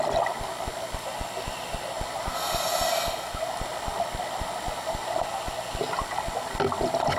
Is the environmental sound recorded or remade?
recorded